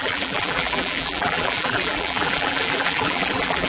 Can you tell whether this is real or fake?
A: fake